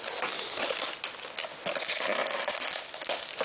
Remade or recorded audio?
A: recorded